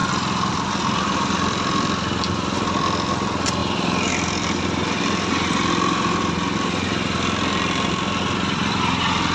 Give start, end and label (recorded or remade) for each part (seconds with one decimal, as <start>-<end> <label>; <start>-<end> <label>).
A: 0.0-9.3 remade